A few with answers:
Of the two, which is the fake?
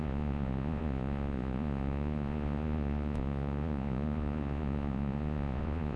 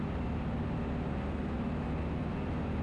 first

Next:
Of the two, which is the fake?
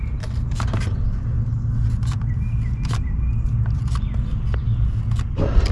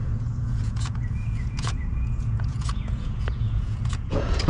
second